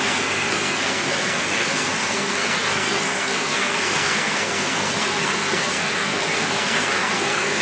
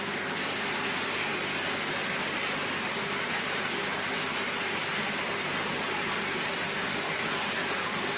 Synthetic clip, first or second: first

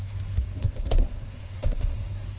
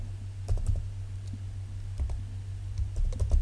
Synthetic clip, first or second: first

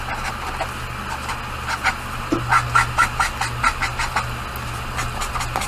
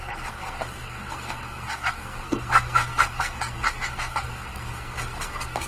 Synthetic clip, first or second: second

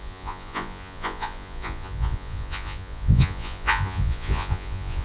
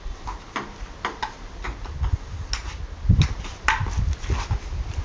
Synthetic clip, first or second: first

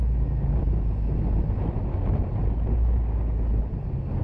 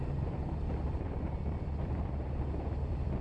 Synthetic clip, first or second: second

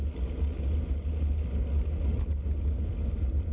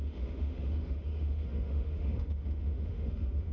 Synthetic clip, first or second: second